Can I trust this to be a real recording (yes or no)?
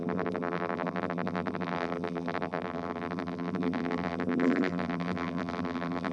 no